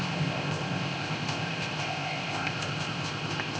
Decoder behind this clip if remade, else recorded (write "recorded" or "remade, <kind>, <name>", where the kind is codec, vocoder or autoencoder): remade, codec, ZipCodec